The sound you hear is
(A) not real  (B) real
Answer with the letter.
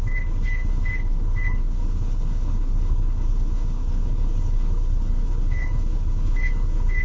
A